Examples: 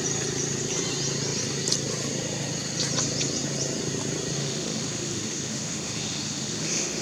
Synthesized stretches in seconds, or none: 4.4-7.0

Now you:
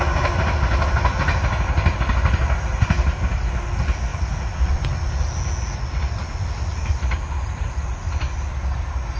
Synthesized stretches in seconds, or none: none

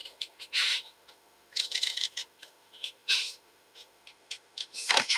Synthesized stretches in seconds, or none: 0.0-5.2

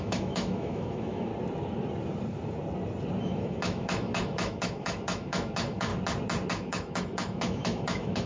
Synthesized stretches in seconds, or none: 0.0-1.3; 3.2-5.9; 6.5-8.3

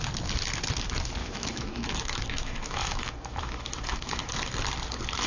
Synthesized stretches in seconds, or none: 1.2-4.3

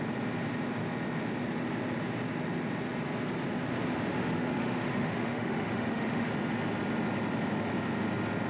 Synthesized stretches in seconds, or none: 4.1-6.3

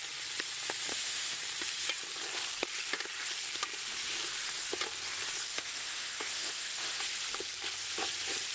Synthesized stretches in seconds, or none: 0.9-1.4; 5.5-7.0